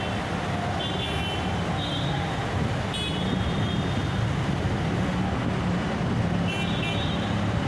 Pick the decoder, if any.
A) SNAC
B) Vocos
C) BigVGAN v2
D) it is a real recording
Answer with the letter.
D